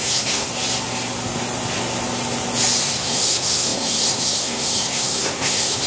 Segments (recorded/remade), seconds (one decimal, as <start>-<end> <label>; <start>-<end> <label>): 0.0-0.5 remade; 0.5-2.8 recorded; 2.8-5.9 remade